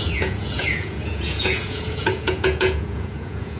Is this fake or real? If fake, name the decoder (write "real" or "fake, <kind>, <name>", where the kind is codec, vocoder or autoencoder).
fake, vocoder, Vocos